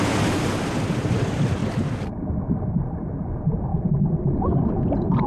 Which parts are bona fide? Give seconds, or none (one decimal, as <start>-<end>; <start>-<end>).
1.6-2.7; 3.7-4.7